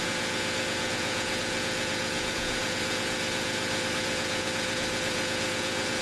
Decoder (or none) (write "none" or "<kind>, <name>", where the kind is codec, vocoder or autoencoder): vocoder, Vocos